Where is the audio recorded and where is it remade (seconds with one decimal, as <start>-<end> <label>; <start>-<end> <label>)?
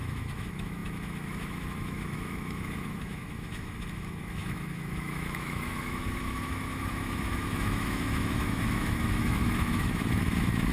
0.0-10.7 remade